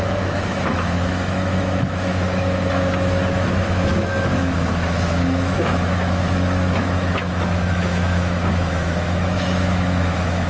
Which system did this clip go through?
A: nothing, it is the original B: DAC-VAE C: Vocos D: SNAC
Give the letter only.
B